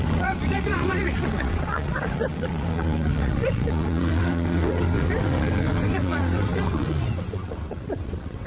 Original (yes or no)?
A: no